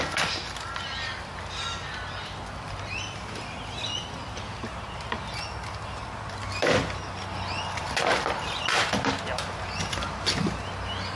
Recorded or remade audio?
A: recorded